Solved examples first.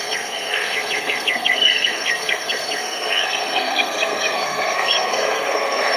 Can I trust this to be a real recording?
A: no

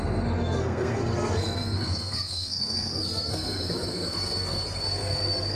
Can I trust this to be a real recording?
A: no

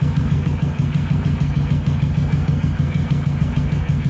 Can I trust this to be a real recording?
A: no